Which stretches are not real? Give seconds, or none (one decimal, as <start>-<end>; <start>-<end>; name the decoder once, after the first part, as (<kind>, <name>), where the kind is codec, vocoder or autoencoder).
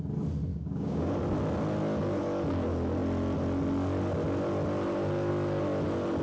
0.5-1.1 (codec, DAC)